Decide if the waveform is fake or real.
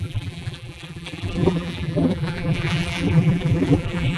fake